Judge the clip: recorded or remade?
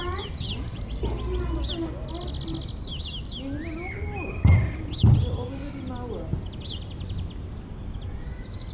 recorded